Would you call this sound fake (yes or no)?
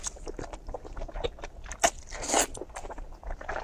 no